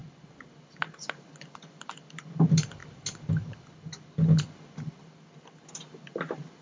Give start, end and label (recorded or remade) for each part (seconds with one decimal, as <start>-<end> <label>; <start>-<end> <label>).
0.0-6.6 recorded

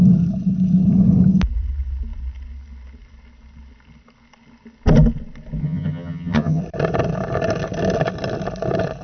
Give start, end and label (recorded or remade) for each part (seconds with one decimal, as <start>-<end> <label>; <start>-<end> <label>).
0.0-5.6 recorded; 5.6-6.6 remade; 6.6-9.0 recorded

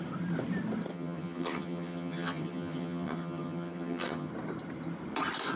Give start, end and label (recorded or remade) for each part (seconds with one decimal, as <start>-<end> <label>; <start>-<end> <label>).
0.0-0.9 recorded; 0.9-4.3 remade; 4.3-5.6 recorded

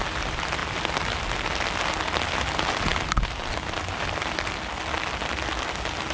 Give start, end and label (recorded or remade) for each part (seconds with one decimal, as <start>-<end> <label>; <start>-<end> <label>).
0.0-6.1 recorded

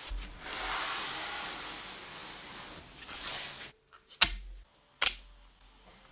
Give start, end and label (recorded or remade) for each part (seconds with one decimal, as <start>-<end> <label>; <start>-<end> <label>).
0.0-6.1 recorded